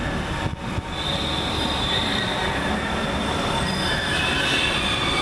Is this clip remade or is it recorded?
recorded